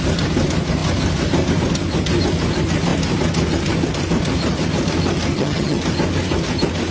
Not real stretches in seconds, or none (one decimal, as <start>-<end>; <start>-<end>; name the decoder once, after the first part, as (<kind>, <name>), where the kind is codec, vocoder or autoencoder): 5.3-5.8 (vocoder, HiFi-GAN)